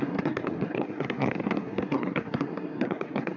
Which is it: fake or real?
fake